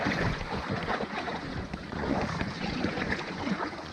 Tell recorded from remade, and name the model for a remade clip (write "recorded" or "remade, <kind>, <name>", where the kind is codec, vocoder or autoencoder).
remade, vocoder, Vocos